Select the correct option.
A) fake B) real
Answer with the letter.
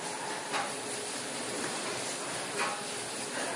B